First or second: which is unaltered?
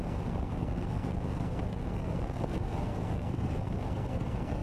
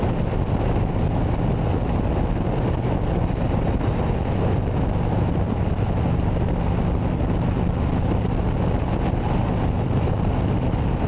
second